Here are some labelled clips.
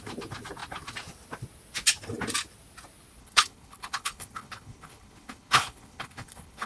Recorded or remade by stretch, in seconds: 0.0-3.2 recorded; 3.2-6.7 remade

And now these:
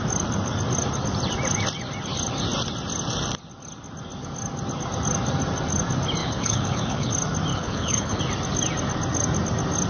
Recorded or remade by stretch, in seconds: 0.0-6.2 recorded; 6.2-7.1 remade; 7.1-7.5 recorded; 7.5-8.2 remade; 8.2-9.9 recorded

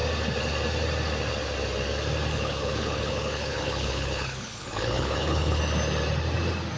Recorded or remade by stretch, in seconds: 0.0-2.3 recorded; 2.3-5.6 remade; 5.6-6.8 recorded

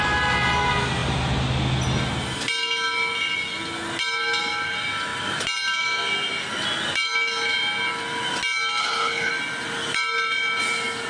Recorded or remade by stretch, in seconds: 0.0-8.8 recorded; 8.8-9.3 remade; 9.3-11.1 recorded

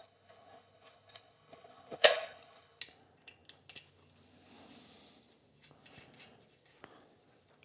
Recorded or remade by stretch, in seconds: 0.0-2.8 remade; 2.8-7.6 recorded

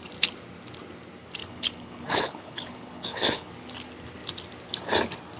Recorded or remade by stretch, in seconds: 0.0-1.4 recorded; 1.4-3.5 remade; 3.5-5.4 recorded

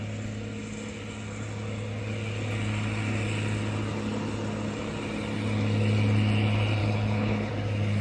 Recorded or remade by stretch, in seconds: 0.0-6.8 recorded; 6.8-7.5 remade; 7.5-8.0 recorded

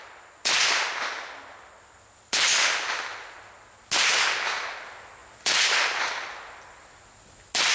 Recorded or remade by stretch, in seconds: 0.0-7.7 recorded